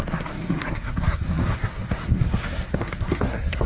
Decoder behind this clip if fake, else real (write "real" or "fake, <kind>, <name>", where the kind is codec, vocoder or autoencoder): fake, codec, SNAC